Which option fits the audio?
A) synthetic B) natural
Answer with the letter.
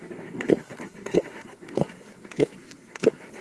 A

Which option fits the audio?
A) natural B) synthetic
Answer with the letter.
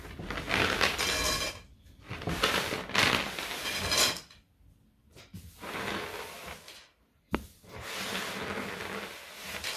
A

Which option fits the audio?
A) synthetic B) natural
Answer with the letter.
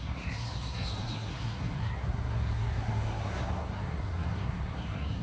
A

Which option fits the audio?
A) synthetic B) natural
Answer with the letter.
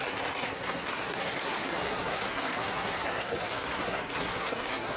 A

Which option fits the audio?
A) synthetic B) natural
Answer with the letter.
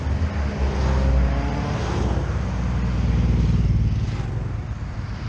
B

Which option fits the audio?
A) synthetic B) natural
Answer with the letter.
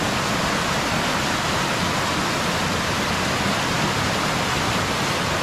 B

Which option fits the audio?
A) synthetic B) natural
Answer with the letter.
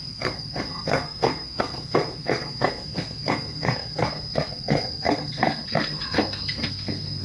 A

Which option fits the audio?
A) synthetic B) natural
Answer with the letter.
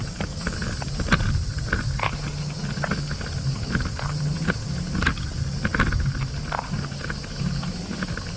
B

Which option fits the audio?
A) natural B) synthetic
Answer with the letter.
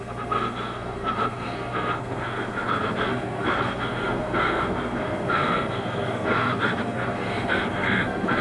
B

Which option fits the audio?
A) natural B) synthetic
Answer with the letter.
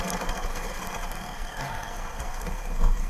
B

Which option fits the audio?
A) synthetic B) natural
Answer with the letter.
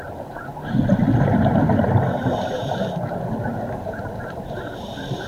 B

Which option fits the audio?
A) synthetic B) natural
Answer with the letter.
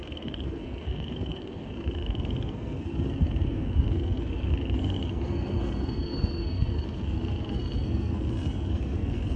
A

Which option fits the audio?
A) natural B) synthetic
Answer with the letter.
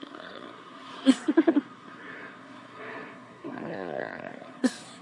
B